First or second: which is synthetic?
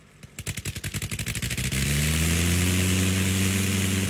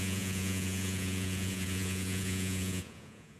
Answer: second